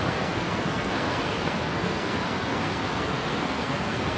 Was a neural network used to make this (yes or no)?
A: yes